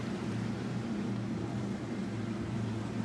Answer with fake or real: fake